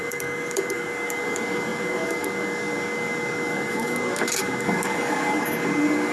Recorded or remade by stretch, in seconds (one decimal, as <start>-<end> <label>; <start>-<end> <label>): 0.0-6.1 remade